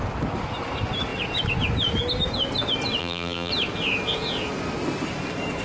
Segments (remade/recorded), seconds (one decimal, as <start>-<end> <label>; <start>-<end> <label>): 0.0-3.0 recorded; 3.0-3.5 remade; 3.5-5.6 recorded